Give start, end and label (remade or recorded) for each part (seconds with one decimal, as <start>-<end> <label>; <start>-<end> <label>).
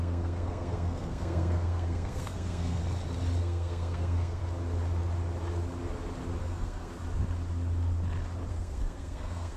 0.0-2.8 remade; 2.8-3.4 recorded; 3.4-4.4 remade; 4.4-6.4 recorded; 6.4-6.9 remade; 6.9-8.5 recorded; 8.5-9.6 remade